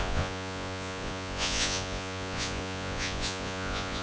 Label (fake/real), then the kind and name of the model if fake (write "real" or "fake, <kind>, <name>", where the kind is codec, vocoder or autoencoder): fake, vocoder, Vocos